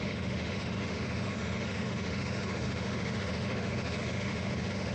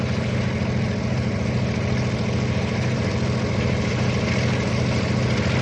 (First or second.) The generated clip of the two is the first